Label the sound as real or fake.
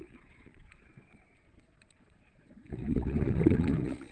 fake